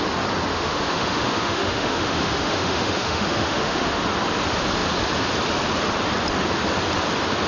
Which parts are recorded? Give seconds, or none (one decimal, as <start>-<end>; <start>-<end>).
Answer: 0.0-0.5; 4.0-7.5